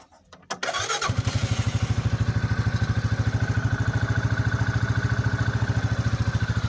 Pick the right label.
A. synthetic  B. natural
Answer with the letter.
B